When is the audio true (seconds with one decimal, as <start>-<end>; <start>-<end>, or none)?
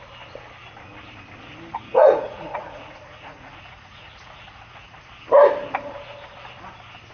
0.0-1.9; 5.1-7.1